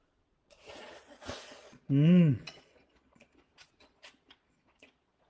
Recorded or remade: remade